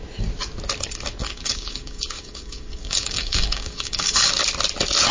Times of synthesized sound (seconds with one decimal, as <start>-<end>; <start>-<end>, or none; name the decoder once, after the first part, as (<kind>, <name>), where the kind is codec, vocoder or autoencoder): 1.2-4.3 (codec, DAC)